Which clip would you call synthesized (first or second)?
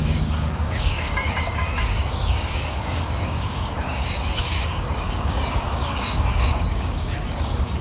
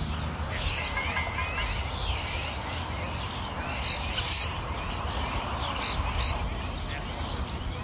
first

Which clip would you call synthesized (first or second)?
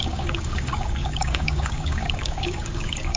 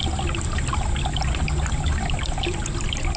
first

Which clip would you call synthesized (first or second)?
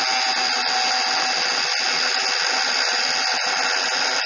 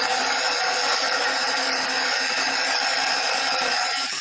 second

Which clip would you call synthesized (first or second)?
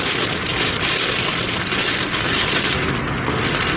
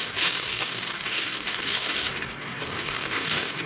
second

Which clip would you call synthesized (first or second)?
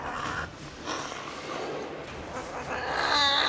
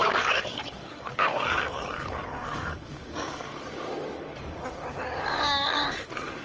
second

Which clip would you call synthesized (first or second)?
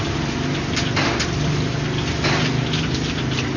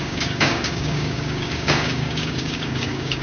second